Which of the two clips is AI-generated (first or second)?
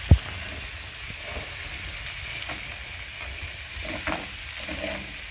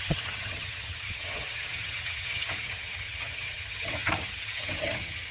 second